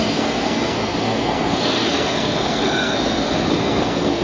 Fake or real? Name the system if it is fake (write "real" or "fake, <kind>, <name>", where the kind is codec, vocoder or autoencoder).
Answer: fake, codec, SNAC